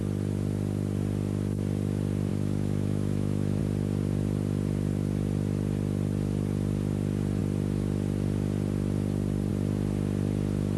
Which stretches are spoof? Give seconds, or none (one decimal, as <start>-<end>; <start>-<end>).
2.3-3.6

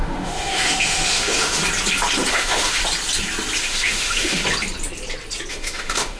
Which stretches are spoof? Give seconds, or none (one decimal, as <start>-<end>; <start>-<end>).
0.0-1.6; 2.3-2.8; 3.6-4.4; 5.5-6.2

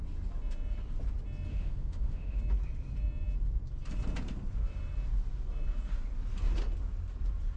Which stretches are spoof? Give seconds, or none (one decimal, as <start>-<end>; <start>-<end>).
1.5-2.4

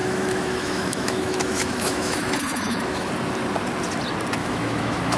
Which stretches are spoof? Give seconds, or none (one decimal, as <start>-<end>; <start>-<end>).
0.0-3.1; 4.4-5.2